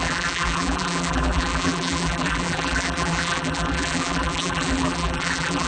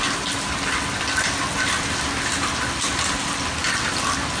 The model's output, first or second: first